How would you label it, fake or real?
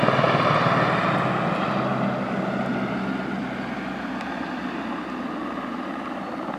real